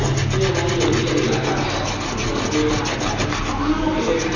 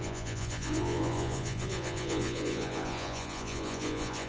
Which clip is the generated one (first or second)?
second